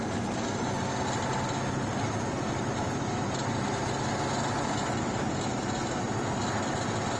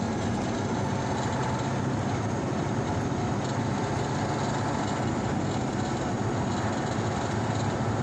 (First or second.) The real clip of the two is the first